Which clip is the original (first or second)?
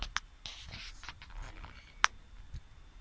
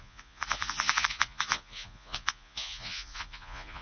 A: first